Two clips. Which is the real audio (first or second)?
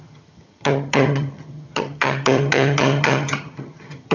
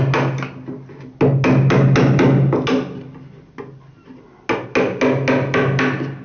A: second